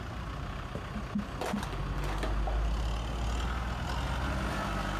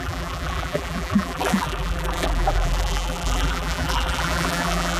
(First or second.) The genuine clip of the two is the first